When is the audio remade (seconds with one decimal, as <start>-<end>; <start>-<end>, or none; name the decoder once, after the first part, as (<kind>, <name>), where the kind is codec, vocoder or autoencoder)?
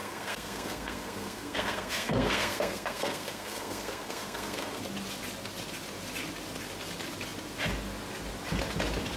0.0-4.8 (codec, SNAC)